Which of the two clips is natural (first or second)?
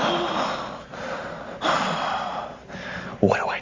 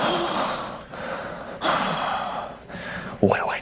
first